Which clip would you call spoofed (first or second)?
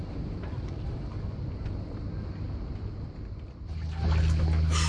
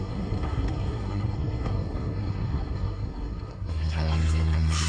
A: second